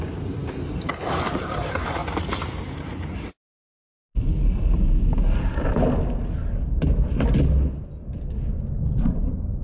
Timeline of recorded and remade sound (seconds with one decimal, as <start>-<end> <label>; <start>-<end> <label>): 0.0-2.0 remade; 2.0-2.6 recorded; 2.6-3.7 remade; 3.7-8.8 recorded; 8.8-9.6 remade